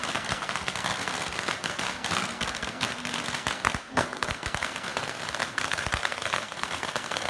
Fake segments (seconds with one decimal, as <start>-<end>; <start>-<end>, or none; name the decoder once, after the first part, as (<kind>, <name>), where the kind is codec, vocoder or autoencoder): 0.0-7.3 (codec, SNAC)